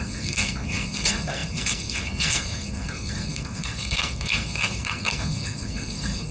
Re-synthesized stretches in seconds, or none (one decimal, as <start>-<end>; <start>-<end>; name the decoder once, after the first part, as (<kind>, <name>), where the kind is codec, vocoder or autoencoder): 0.0-6.3 (codec, SNAC)